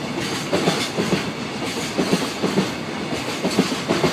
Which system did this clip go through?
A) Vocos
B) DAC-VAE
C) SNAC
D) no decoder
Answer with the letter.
D